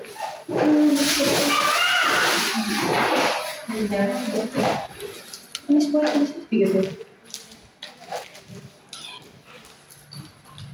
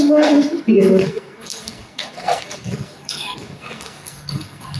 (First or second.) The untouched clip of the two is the first